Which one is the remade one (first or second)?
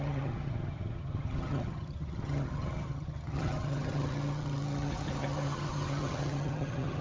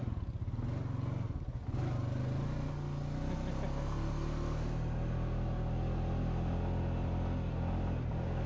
first